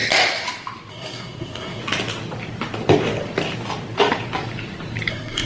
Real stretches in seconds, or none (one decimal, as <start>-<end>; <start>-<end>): 0.0-0.9; 1.8-5.1